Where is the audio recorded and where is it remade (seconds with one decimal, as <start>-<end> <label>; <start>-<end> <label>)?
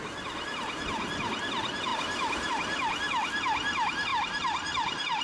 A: 0.0-1.9 recorded; 1.9-2.5 remade; 2.5-4.1 recorded; 4.1-5.2 remade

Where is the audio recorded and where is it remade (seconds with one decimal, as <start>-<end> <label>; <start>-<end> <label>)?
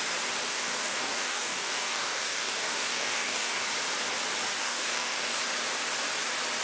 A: 0.0-0.5 recorded; 0.5-3.6 remade; 3.6-4.6 recorded; 4.6-5.4 remade; 5.4-6.6 recorded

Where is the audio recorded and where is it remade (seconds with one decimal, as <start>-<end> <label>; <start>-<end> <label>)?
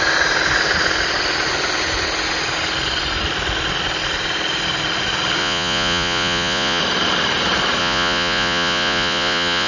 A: 0.0-5.4 recorded; 5.4-6.8 remade; 6.8-7.8 recorded; 7.8-9.7 remade